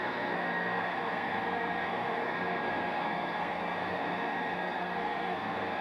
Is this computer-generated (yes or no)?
yes